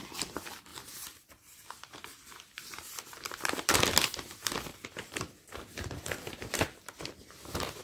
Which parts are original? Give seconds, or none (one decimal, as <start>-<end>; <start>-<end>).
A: 0.0-0.7; 3.8-4.7; 6.5-7.8